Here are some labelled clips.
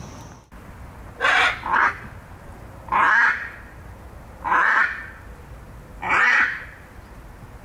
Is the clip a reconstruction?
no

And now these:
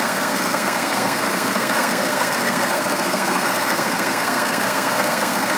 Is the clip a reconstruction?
yes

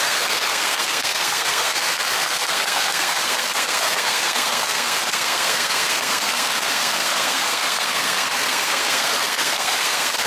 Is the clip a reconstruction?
yes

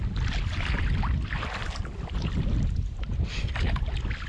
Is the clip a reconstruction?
no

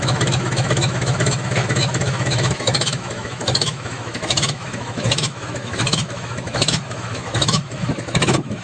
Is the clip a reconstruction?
yes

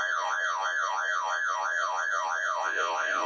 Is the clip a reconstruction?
yes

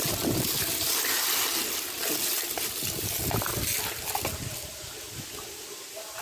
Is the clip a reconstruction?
no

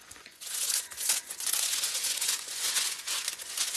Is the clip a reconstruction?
yes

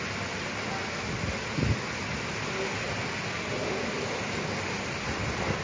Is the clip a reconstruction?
no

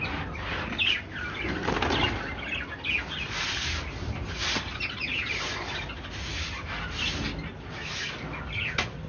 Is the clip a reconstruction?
no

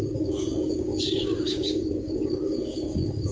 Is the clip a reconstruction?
yes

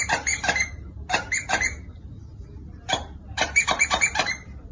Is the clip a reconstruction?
no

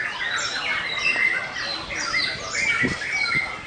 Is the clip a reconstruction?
no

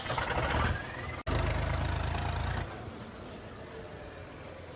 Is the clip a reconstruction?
no